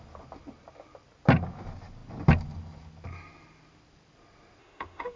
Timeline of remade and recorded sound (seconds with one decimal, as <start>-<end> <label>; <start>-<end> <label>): 0.0-4.6 recorded; 4.6-5.2 remade